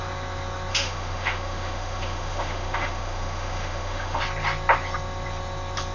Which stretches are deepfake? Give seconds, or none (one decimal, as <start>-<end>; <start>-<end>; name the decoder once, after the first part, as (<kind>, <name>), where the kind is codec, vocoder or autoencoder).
0.7-4.2 (autoencoder, DAC-VAE)